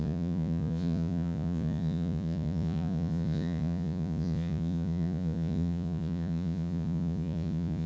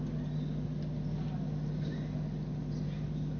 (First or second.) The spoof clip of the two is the first